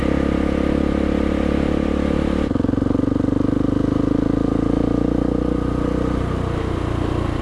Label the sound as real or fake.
real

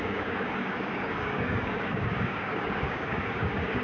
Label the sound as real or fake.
fake